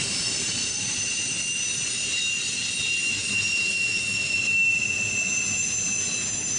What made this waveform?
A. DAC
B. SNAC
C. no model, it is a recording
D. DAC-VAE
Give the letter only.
C